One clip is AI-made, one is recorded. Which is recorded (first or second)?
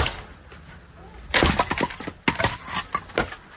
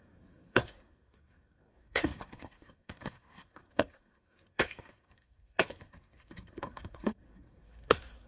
first